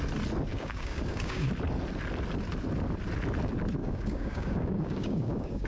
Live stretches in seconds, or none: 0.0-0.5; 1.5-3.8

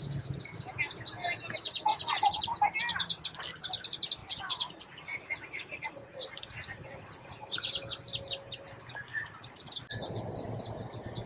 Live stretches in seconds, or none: 0.0-1.9; 2.4-4.2; 7.4-9.1; 9.7-11.3